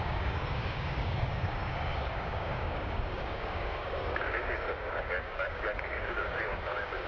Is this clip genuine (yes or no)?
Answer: no